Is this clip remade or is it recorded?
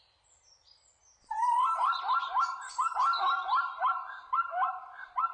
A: remade